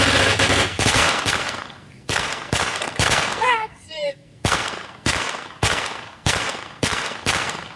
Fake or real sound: fake